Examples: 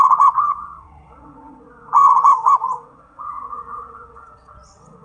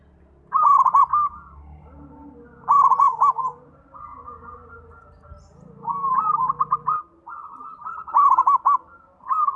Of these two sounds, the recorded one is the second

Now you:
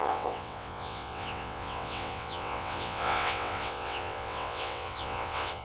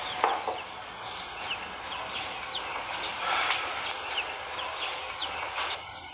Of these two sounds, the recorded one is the second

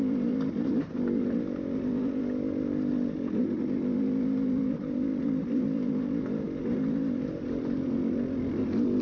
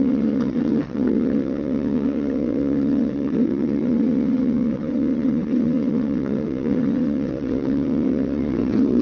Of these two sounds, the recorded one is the first